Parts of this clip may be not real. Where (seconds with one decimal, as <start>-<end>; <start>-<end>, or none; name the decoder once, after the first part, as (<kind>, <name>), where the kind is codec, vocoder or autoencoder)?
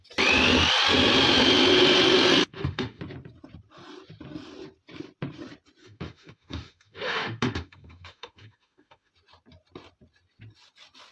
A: 2.4-3.0 (autoencoder, DAC-VAE); 5.8-9.1